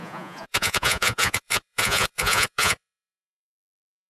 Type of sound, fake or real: fake